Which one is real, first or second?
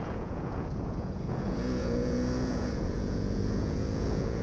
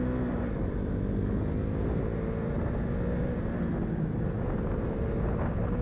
second